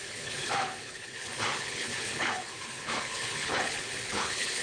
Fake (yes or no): yes